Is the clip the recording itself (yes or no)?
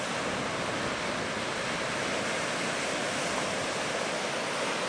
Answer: yes